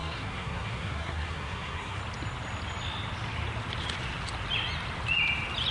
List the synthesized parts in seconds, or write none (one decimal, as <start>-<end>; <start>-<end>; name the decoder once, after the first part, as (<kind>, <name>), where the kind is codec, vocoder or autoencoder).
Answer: 0.0-2.0 (codec, SNAC)